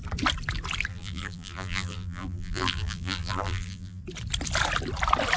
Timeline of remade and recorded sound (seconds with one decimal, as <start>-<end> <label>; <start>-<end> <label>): 0.0-0.9 recorded; 0.9-4.0 remade; 4.0-5.4 recorded